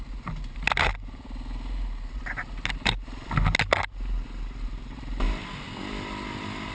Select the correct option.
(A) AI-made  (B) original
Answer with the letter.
B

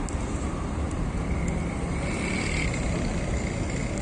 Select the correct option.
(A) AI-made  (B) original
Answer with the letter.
B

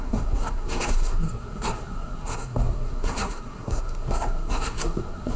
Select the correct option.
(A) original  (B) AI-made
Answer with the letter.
B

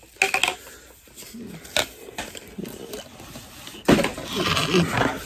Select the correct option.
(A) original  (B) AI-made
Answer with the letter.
A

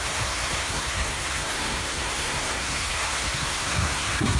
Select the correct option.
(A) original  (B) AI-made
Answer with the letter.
B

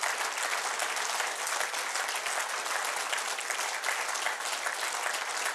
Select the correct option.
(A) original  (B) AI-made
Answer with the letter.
A